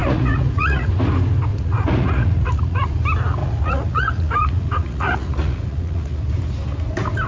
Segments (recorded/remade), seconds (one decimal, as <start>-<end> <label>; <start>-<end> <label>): 0.0-0.9 remade; 0.9-1.5 recorded; 1.5-2.9 remade; 2.9-3.4 recorded; 3.4-6.2 remade; 6.2-7.3 recorded